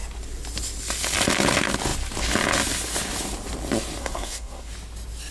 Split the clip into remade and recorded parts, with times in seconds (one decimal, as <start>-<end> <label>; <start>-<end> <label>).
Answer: 0.0-4.0 recorded; 4.0-4.7 remade; 4.7-5.3 recorded